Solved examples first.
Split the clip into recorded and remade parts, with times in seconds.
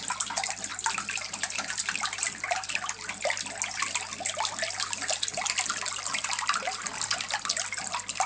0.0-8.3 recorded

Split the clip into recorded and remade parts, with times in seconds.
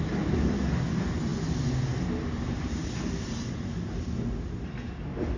0.0-5.4 recorded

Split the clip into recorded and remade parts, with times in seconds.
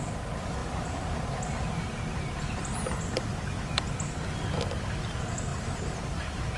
0.0-5.5 recorded; 5.5-6.6 remade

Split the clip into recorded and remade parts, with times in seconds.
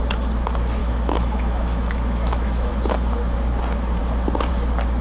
0.0-0.8 recorded; 0.8-2.7 remade; 2.7-5.0 recorded